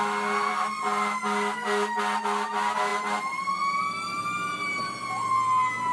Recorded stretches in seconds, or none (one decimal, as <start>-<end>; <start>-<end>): 0.0-5.9